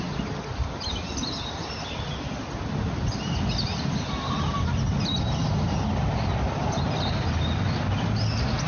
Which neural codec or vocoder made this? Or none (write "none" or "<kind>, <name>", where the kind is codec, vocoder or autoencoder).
none